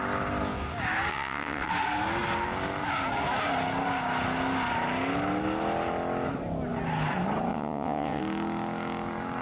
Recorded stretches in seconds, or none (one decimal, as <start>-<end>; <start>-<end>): 0.0-1.1; 1.7-7.5; 8.2-9.4